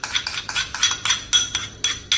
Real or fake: real